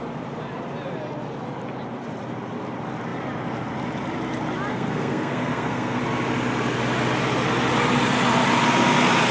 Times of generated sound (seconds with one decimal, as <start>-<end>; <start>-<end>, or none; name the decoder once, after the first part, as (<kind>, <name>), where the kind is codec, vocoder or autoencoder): 4.7-6.0 (codec, SNAC)